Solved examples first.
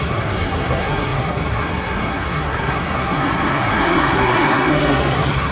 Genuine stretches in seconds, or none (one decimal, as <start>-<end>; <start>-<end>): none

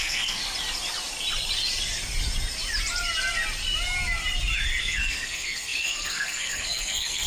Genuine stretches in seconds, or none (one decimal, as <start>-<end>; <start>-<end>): 0.4-4.8

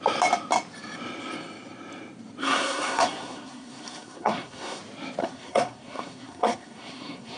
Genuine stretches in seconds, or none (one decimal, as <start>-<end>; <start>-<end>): 0.0-2.4; 4.8-5.2

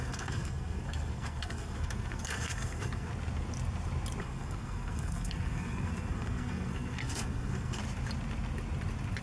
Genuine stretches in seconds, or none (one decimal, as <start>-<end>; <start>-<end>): 3.1-4.2; 7.8-9.2